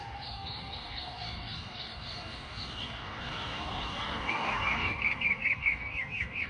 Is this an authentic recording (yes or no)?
no